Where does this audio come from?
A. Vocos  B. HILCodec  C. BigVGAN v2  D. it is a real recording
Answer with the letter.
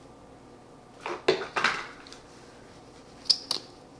D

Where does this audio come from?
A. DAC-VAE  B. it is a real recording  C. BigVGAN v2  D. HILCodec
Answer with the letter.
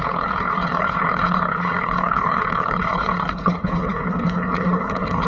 D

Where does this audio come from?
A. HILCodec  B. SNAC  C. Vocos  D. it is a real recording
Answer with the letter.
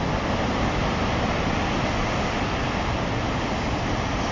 D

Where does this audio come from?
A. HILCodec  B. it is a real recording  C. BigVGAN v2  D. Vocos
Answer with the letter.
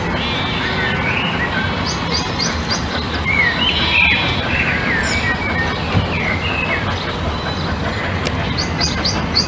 B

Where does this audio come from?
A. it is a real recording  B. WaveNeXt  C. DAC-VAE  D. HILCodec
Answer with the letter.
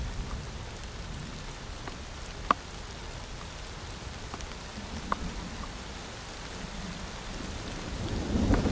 A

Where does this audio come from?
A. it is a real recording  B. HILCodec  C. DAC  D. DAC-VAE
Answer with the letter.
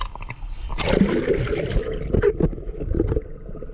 A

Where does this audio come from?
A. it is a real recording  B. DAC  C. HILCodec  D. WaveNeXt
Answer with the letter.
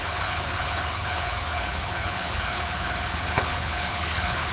C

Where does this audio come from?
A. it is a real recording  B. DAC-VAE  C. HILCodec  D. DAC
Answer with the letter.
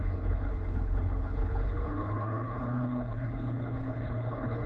C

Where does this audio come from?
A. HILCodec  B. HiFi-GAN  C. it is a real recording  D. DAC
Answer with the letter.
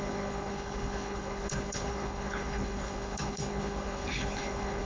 A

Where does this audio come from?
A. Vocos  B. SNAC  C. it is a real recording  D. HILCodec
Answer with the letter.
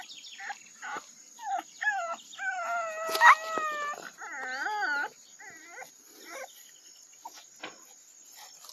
C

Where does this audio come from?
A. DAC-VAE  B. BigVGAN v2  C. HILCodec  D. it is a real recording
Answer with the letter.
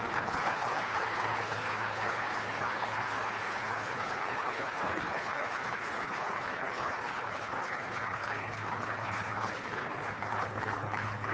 C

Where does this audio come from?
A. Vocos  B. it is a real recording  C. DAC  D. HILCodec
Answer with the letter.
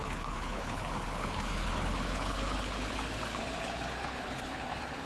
D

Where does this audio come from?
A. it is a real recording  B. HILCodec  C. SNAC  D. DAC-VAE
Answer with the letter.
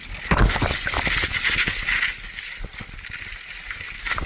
A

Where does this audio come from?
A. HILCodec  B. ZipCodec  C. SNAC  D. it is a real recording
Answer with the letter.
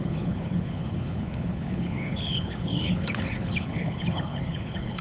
A